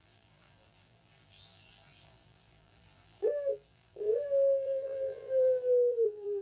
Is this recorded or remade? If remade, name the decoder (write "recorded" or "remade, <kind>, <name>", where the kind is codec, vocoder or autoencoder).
remade, vocoder, BigVGAN v2